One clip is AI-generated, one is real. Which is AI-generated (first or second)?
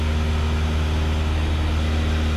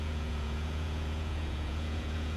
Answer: second